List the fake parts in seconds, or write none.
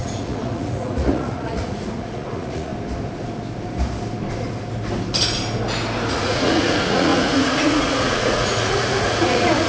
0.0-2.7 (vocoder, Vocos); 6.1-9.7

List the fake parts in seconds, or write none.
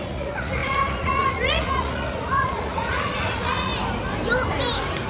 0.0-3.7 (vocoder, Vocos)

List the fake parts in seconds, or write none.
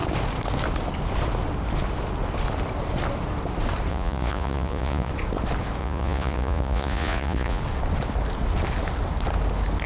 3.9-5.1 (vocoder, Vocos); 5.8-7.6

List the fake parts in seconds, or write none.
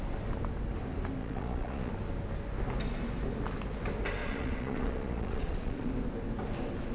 1.2-1.9 (vocoder, Vocos); 4.2-5.9